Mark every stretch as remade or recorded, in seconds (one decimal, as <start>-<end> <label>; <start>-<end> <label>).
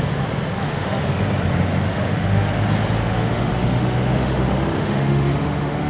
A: 0.0-0.6 recorded; 0.6-1.2 remade; 1.2-1.9 recorded; 1.9-2.5 remade; 2.5-3.0 recorded; 3.0-5.9 remade